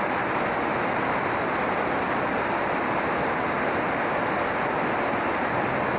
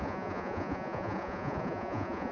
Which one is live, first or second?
first